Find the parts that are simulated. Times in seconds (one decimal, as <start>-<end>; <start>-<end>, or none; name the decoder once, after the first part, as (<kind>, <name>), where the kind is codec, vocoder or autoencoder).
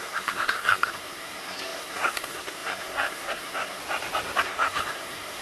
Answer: 0.0-3.8 (codec, SNAC); 4.4-5.4